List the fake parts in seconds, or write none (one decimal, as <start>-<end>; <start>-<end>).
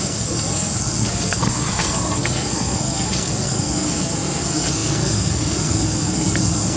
0.0-6.8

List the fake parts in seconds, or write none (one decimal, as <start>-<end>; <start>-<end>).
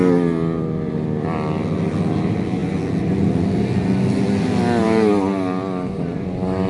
none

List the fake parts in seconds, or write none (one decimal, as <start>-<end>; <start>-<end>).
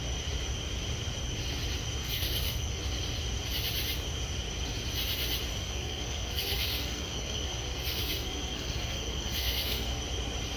2.0-2.8; 5.5-10.0